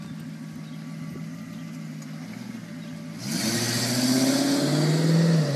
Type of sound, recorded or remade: recorded